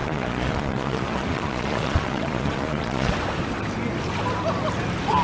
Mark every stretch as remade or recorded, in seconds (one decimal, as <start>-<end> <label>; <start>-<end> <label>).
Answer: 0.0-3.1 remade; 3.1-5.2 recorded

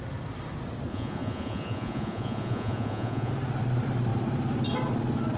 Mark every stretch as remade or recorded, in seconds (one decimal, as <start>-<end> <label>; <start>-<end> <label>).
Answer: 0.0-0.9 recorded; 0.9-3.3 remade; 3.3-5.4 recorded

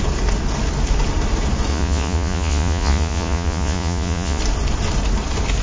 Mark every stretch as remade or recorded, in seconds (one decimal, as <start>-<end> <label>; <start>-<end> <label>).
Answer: 0.0-1.7 recorded; 1.7-4.4 remade; 4.4-5.6 recorded

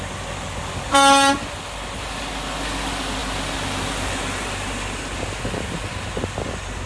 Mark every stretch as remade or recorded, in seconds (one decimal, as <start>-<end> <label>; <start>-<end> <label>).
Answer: 0.0-6.9 recorded

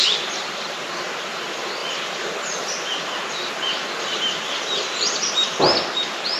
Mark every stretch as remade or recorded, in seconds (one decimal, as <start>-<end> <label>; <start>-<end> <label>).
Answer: 0.0-6.4 recorded

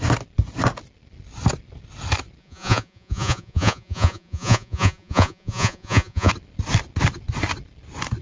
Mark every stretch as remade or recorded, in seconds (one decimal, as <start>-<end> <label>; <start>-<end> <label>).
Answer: 0.0-2.4 recorded; 2.4-6.3 remade; 6.3-8.2 recorded

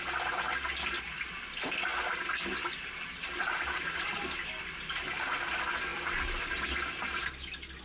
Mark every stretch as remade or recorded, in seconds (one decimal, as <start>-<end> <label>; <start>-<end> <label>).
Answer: 0.0-7.8 recorded

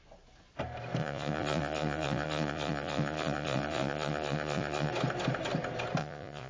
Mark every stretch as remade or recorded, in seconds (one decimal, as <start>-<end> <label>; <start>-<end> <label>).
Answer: 0.0-1.0 recorded; 1.0-4.9 remade; 4.9-6.0 recorded; 6.0-6.5 remade